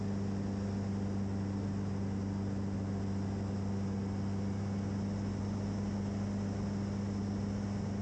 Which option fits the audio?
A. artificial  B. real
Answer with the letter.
B